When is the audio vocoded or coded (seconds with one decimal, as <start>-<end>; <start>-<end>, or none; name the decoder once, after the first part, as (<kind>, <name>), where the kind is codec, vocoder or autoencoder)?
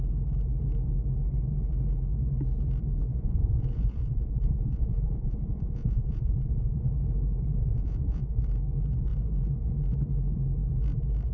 3.1-6.9 (vocoder, Vocos); 7.6-8.4